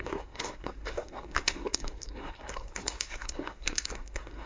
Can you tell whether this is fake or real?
fake